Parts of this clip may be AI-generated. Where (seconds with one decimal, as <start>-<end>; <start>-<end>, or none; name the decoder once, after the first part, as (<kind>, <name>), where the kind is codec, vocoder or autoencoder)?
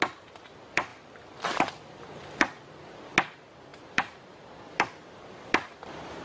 0.9-2.7 (vocoder, BigVGAN v2); 3.7-5.8